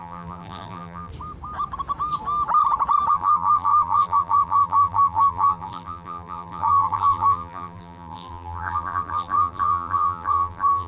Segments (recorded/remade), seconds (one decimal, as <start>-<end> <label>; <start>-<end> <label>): 0.0-1.1 remade; 1.1-3.1 recorded; 3.1-10.9 remade

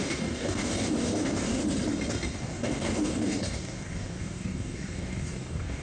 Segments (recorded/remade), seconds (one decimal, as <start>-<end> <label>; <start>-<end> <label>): 0.0-1.6 remade; 1.6-2.4 recorded; 2.4-5.8 remade

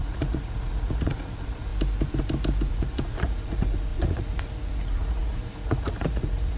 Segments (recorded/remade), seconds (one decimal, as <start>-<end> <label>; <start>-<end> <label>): 0.0-1.7 remade; 1.7-2.7 recorded; 2.7-6.6 remade